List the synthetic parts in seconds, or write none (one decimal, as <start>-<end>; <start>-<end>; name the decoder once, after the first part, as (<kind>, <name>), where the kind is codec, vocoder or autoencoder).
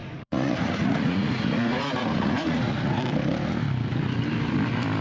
0.0-3.0 (vocoder, Vocos)